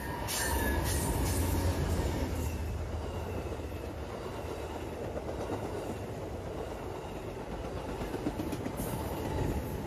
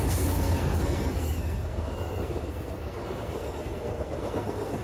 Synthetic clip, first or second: second